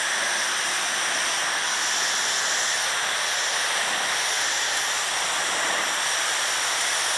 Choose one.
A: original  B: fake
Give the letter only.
A